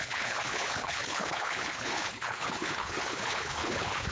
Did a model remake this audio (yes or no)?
yes